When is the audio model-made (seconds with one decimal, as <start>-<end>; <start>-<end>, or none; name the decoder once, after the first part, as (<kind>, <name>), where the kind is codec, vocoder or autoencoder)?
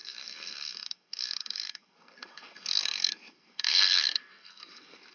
0.0-5.1 (codec, SNAC)